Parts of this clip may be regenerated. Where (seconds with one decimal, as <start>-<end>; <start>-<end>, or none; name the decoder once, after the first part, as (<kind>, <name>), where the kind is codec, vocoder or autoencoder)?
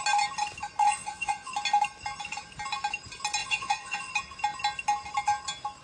0.8-1.5 (vocoder, Vocos); 3.4-4.1